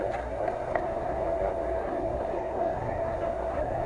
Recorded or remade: remade